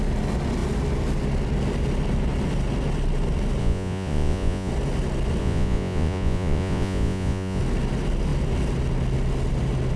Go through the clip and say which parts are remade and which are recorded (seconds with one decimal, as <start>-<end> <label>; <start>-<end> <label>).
0.0-3.6 recorded; 3.6-4.7 remade; 4.7-5.4 recorded; 5.4-7.6 remade; 7.6-10.0 recorded